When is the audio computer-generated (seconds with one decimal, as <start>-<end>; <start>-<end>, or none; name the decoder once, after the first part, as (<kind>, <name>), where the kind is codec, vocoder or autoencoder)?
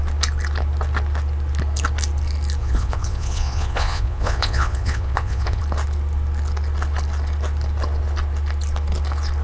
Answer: 2.6-5.6 (vocoder, Vocos)